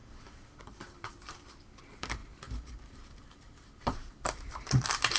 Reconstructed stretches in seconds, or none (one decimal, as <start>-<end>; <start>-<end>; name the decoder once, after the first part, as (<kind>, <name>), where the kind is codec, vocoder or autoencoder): 0.0-5.2 (vocoder, BigVGAN v2)